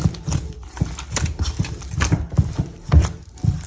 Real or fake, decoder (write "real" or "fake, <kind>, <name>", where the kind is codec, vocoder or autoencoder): fake, vocoder, BigVGAN v2